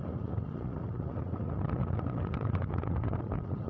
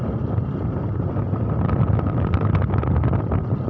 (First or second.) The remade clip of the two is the first